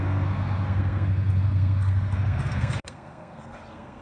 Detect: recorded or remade remade